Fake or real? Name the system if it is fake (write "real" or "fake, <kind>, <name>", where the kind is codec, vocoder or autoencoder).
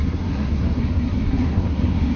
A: fake, codec, SNAC